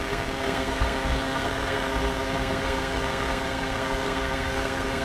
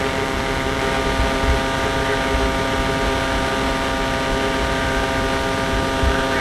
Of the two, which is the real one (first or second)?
second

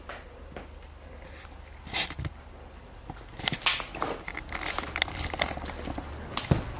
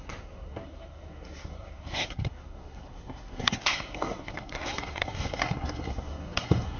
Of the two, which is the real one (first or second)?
first